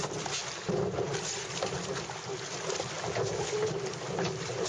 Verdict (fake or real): real